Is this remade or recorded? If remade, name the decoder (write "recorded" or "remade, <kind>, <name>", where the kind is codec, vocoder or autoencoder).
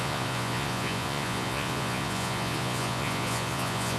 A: remade, vocoder, Vocos